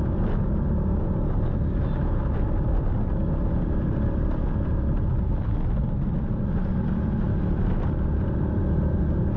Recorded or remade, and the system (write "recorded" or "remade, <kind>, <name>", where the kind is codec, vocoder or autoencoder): recorded